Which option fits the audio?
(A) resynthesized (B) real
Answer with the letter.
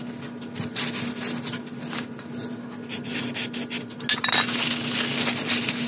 B